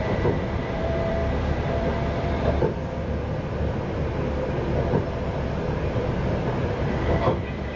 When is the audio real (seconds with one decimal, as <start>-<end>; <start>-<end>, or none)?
none